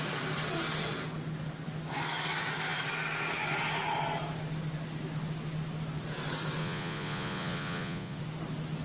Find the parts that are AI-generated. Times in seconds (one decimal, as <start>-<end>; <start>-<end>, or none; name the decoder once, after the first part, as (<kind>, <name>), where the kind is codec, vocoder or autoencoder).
6.6-8.2 (vocoder, Vocos)